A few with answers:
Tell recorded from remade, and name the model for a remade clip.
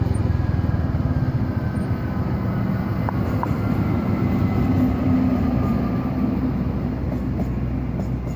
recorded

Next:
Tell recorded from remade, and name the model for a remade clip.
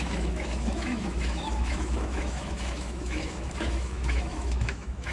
remade, autoencoder, DAC-VAE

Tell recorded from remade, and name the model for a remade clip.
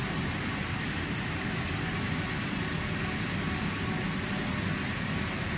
recorded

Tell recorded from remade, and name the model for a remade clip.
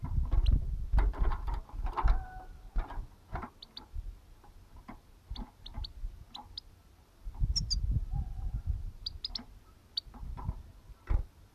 recorded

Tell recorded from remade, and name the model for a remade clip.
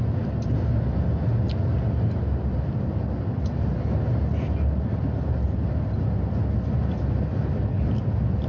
recorded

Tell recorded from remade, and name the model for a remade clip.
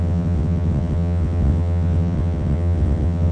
remade, vocoder, WaveNeXt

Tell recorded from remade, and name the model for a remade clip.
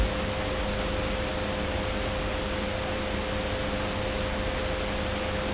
recorded